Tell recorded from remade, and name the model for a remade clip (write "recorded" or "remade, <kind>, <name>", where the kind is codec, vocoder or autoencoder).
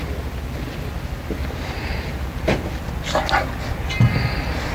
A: recorded